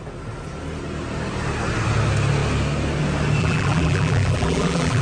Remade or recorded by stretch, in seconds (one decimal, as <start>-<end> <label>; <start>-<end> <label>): 0.0-3.4 recorded; 3.4-5.0 remade

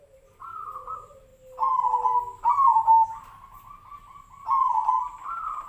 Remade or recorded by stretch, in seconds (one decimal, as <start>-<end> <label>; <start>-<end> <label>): 0.0-1.3 remade; 1.3-4.7 recorded; 4.7-5.7 remade

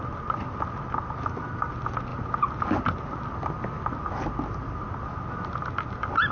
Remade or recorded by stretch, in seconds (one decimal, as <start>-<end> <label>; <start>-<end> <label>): 0.0-6.3 recorded

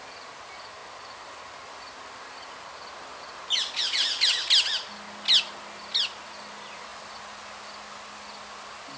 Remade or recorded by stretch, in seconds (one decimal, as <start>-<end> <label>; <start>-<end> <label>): 0.0-9.0 recorded

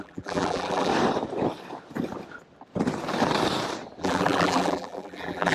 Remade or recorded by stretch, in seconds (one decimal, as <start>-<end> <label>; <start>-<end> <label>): 0.0-0.9 remade; 0.9-4.0 recorded; 4.0-5.5 remade

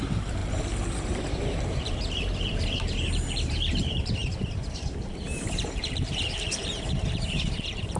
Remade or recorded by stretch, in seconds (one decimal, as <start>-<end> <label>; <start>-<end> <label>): 0.0-0.4 remade; 0.4-1.0 recorded; 1.0-8.0 remade

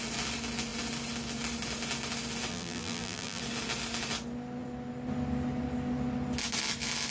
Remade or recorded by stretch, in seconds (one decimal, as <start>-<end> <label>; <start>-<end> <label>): 0.0-2.5 recorded; 2.5-3.4 remade; 3.4-7.1 recorded

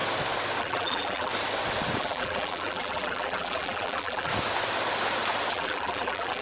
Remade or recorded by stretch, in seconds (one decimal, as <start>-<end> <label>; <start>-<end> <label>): 0.0-0.6 recorded; 0.6-1.3 remade; 1.3-2.0 recorded; 2.0-4.3 remade; 4.3-5.5 recorded; 5.5-6.4 remade